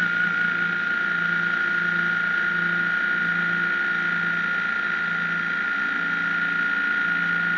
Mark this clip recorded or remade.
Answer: recorded